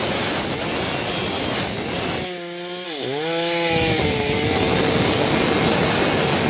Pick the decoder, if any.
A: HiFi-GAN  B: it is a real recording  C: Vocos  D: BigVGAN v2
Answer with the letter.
B